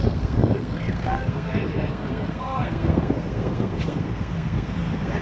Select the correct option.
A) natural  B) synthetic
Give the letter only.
B